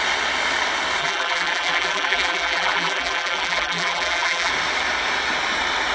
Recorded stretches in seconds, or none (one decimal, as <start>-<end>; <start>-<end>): 0.0-1.0; 4.5-5.9

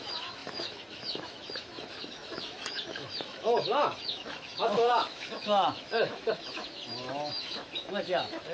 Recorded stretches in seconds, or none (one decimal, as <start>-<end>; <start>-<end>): none

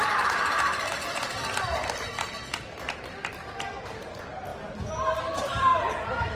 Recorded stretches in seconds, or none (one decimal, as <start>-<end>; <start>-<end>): 3.2-3.8; 4.5-5.2